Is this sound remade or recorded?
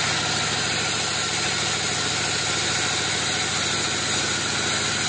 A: recorded